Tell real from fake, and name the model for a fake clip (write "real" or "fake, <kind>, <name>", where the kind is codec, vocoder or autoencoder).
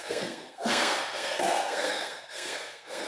fake, codec, SNAC